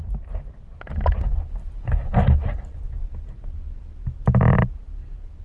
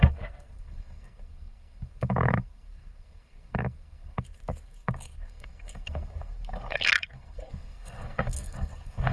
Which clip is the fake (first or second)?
second